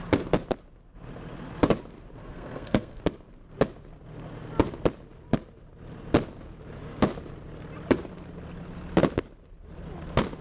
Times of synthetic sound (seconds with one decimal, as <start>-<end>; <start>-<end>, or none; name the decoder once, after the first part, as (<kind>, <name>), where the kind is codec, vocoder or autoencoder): 2.2-3.0 (codec, SNAC)